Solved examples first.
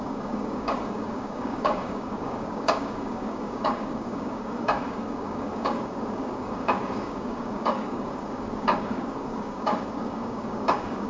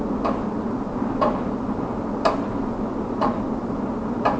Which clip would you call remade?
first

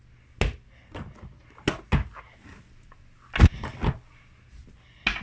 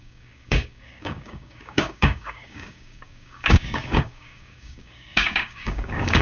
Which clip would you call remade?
second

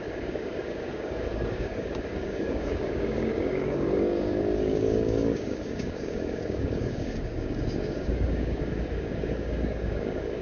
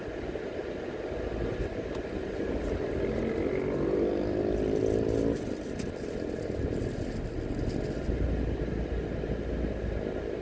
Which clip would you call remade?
first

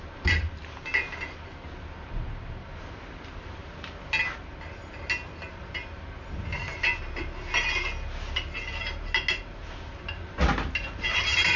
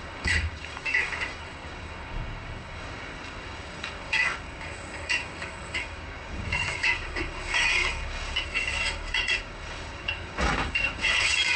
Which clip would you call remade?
second